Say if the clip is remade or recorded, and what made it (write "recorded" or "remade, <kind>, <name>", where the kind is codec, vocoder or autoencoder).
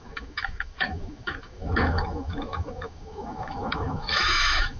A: remade, autoencoder, DAC-VAE